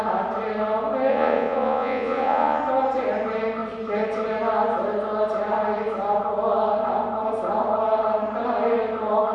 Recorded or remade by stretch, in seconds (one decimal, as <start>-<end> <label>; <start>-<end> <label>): 0.0-1.1 recorded; 1.1-2.6 remade; 2.6-9.3 recorded